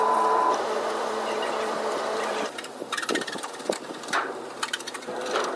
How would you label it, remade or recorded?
remade